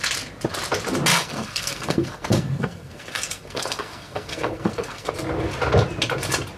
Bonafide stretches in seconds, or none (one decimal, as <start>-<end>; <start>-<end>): 0.0-1.1; 5.1-6.6